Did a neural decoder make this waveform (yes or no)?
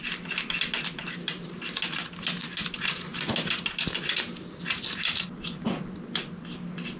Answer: no